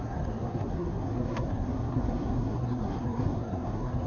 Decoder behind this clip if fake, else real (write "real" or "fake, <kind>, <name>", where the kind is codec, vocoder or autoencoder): fake, codec, SNAC